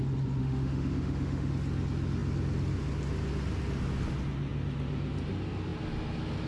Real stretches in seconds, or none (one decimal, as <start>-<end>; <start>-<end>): 0.0-0.4; 1.5-6.5